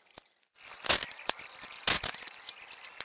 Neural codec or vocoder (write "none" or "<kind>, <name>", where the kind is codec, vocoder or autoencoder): none